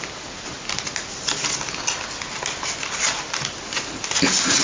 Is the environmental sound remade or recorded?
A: recorded